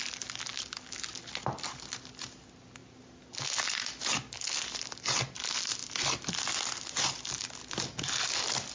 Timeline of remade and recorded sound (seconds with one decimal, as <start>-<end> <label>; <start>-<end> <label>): 0.0-8.7 recorded